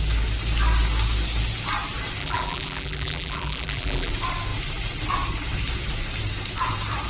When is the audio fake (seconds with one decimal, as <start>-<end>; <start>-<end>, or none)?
2.2-4.1